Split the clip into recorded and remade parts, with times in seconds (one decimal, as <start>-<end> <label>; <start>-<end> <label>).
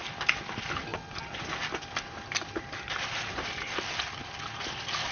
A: 0.0-5.1 recorded